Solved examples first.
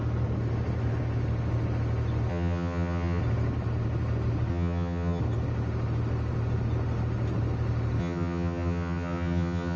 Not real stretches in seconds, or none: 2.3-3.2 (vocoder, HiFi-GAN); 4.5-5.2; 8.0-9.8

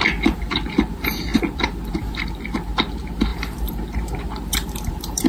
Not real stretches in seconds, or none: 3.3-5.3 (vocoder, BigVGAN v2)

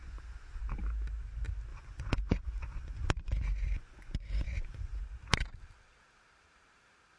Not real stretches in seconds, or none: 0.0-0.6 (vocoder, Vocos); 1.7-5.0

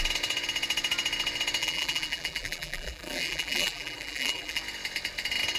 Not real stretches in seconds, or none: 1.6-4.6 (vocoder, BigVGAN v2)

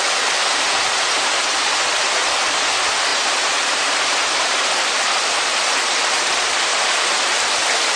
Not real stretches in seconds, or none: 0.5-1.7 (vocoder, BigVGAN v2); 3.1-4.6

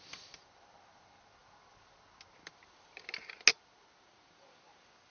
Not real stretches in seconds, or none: none